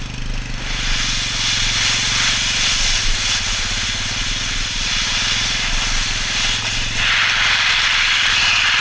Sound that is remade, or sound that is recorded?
recorded